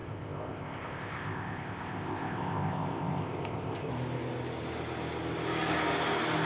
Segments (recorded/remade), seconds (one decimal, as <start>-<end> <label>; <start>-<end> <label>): 0.0-3.9 remade; 3.9-6.5 recorded

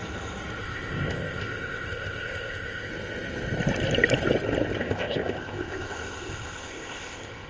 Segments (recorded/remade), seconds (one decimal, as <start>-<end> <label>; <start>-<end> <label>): 0.0-0.6 recorded; 0.6-2.9 remade; 2.9-4.8 recorded; 4.8-7.5 remade

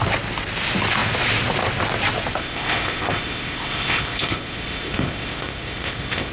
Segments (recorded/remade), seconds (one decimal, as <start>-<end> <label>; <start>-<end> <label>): 0.0-2.4 recorded; 2.4-6.3 remade

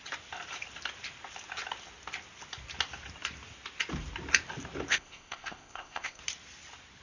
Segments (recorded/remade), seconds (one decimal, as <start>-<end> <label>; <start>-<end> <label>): 0.0-4.9 recorded; 4.9-6.2 remade; 6.2-7.0 recorded

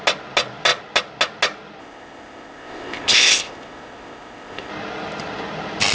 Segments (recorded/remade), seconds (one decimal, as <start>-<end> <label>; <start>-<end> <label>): 0.0-1.8 recorded; 1.8-4.7 remade; 4.7-5.9 recorded